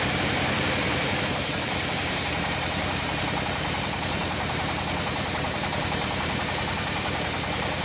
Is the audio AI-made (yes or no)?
yes